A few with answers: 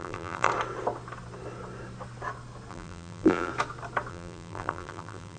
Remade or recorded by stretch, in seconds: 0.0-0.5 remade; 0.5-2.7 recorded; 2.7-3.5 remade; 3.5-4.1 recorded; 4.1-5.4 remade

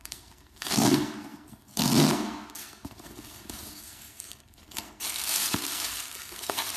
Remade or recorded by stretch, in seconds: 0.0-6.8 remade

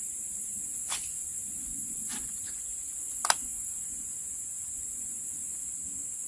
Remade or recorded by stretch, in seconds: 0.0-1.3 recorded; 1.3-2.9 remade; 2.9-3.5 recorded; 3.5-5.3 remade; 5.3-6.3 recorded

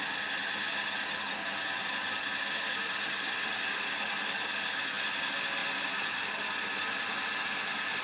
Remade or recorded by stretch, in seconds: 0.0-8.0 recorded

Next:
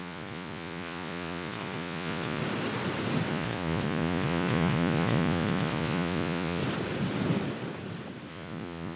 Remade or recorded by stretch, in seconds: 0.0-2.4 remade; 2.4-3.3 recorded; 3.3-6.6 remade; 6.6-8.3 recorded; 8.3-9.0 remade